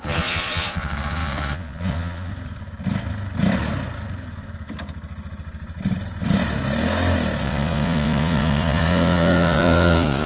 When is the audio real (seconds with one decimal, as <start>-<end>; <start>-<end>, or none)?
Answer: 2.3-7.4